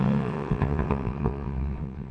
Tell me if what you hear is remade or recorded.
remade